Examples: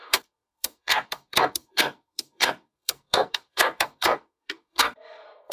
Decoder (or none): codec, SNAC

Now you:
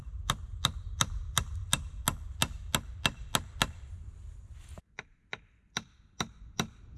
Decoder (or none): none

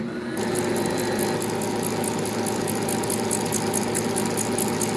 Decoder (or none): none